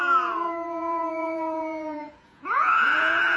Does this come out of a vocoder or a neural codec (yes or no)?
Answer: yes